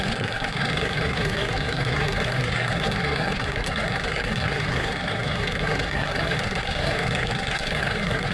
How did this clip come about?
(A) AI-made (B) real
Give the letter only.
A